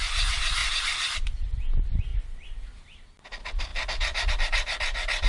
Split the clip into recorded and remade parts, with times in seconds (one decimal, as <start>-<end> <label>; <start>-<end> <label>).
0.0-0.6 recorded; 0.6-1.3 remade; 1.3-5.3 recorded